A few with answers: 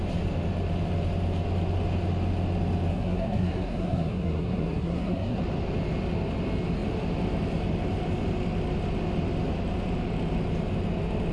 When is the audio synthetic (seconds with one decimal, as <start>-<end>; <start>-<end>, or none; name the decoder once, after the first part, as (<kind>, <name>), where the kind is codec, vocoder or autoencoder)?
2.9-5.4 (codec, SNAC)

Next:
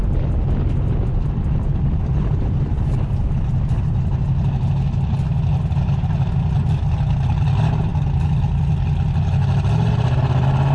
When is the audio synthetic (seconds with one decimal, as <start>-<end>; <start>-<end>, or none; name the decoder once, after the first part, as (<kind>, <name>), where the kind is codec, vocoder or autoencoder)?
none

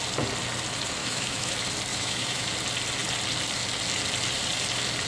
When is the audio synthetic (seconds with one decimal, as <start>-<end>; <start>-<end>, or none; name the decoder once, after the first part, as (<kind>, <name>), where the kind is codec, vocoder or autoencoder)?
1.0-1.5 (autoencoder, DAC-VAE); 1.9-2.5

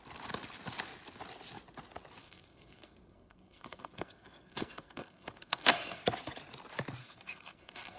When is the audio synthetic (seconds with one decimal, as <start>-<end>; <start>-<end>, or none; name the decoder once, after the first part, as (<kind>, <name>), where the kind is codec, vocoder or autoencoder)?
2.2-6.0 (codec, SNAC); 7.0-8.0

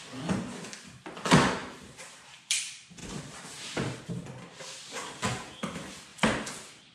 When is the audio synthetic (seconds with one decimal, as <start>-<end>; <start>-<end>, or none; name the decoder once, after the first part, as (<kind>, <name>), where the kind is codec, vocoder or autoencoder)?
1.6-2.6 (vocoder, BigVGAN v2); 3.0-4.1; 6.1-6.9